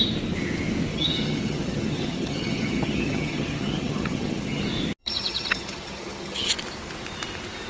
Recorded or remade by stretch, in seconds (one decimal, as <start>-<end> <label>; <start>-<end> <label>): 0.0-0.9 recorded; 0.9-4.6 remade; 4.6-5.0 recorded; 5.0-6.5 remade; 6.5-7.7 recorded